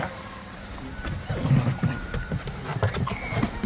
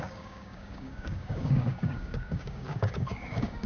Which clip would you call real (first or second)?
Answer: first